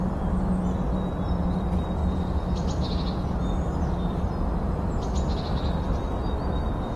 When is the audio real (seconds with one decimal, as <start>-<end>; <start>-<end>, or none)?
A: 0.0-7.0